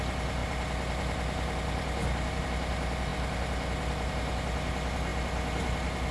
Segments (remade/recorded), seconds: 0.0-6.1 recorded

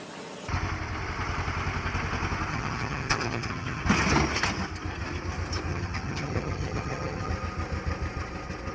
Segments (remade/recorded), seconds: 0.0-2.5 recorded; 2.5-3.8 remade; 3.8-5.7 recorded; 5.7-7.3 remade; 7.3-8.7 recorded

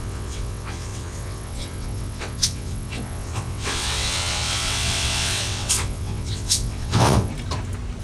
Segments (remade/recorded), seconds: 0.0-7.3 remade; 7.3-8.0 recorded

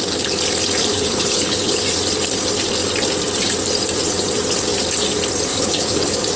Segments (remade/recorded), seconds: 0.0-0.9 recorded; 0.9-1.8 remade; 1.8-5.5 recorded; 5.5-6.0 remade; 6.0-6.4 recorded